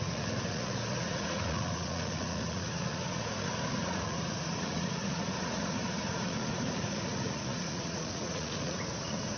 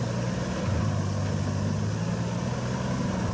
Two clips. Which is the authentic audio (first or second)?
second